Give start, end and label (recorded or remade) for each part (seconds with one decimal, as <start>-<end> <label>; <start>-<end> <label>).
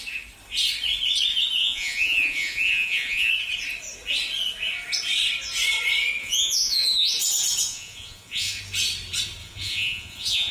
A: 0.0-1.6 recorded; 1.6-3.3 remade; 3.3-6.2 recorded; 6.2-7.1 remade; 7.1-7.7 recorded; 7.7-8.6 remade; 8.6-9.4 recorded; 9.4-10.5 remade